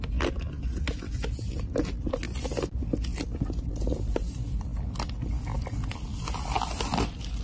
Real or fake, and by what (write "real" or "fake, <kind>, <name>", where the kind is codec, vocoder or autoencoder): real